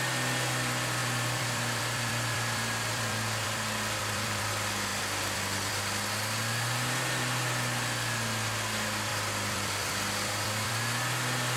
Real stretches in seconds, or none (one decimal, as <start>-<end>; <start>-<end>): 0.0-1.0; 4.4-4.9; 5.7-9.1; 10.7-11.6